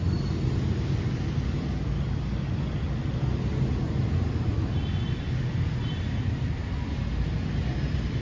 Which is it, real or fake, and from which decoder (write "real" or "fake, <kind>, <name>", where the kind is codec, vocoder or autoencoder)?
real